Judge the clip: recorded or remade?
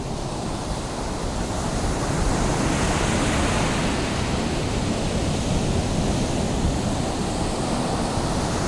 recorded